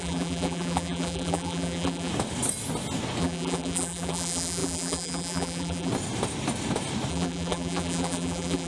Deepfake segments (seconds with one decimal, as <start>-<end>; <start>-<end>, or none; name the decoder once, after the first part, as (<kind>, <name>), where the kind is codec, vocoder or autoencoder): 0.0-2.1 (vocoder, BigVGAN v2); 3.2-5.9; 7.1-8.7